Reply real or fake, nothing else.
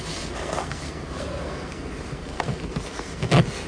fake